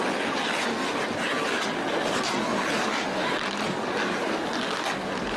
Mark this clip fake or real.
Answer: real